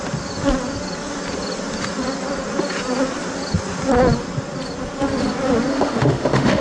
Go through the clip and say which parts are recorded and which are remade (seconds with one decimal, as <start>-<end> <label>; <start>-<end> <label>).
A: 0.0-5.7 recorded; 5.7-6.6 remade